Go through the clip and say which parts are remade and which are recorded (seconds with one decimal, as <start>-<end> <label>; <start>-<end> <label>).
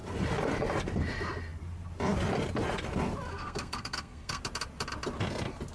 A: 0.0-3.3 recorded; 3.3-4.4 remade; 4.4-5.7 recorded